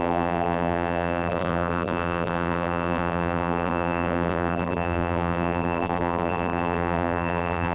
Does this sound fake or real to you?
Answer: fake